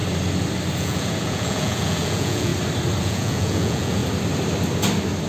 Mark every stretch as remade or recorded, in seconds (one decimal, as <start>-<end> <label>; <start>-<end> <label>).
0.0-0.8 recorded; 0.8-2.5 remade; 2.5-3.0 recorded; 3.0-4.0 remade; 4.0-5.3 recorded